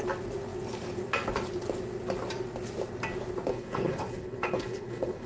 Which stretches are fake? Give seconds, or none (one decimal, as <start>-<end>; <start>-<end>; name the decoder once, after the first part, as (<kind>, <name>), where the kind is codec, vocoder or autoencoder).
3.5-5.3 (codec, HILCodec)